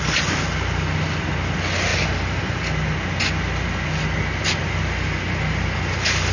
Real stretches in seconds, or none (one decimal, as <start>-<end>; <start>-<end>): 0.0-6.3